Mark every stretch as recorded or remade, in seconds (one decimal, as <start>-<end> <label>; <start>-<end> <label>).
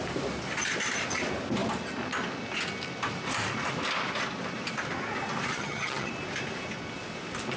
0.0-5.5 recorded; 5.5-6.1 remade; 6.1-7.6 recorded